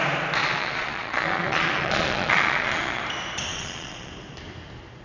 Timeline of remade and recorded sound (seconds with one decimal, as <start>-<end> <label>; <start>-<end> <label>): 0.0-0.4 recorded; 0.4-3.0 remade; 3.0-3.5 recorded; 3.5-4.1 remade; 4.1-5.0 recorded